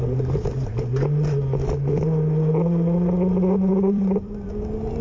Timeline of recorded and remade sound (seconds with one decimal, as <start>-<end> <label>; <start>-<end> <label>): 0.0-3.7 recorded; 3.7-4.5 remade; 4.5-5.0 recorded